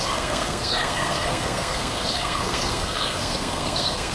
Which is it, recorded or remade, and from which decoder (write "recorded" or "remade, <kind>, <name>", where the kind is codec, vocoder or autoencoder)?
remade, codec, SNAC